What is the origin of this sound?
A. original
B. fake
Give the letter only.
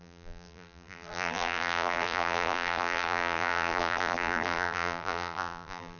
B